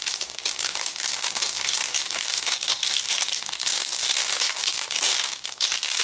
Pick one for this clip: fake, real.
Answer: fake